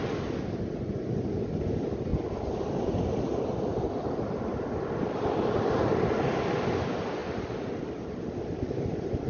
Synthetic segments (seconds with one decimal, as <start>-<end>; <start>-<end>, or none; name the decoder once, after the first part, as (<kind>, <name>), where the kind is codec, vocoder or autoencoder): none